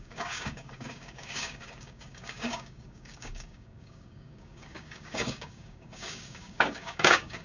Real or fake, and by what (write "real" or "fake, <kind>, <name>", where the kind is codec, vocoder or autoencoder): fake, codec, DAC